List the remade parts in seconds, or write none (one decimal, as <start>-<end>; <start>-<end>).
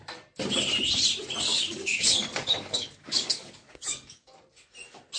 1.5-4.4